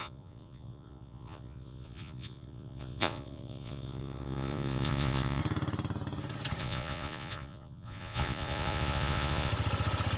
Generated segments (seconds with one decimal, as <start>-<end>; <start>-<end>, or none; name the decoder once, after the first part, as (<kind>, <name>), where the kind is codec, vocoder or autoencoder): 0.0-5.4 (vocoder, Vocos); 6.6-9.5